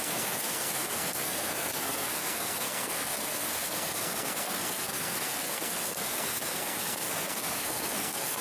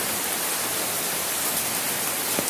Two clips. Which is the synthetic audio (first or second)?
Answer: first